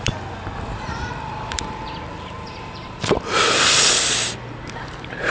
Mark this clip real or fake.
fake